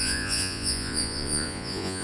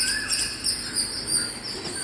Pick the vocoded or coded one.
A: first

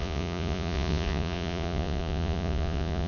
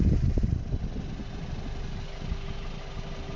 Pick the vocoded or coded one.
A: first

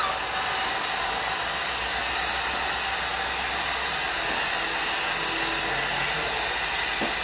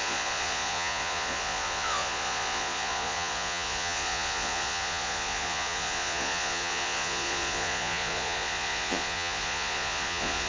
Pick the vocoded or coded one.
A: second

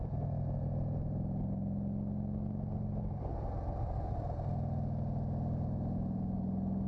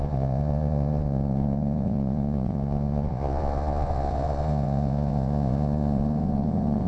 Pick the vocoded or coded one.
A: second